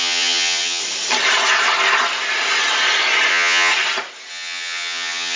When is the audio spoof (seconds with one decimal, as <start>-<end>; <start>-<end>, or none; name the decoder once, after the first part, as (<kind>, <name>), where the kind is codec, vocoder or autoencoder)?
0.0-0.8 (vocoder, HiFi-GAN); 3.3-3.7; 4.3-5.4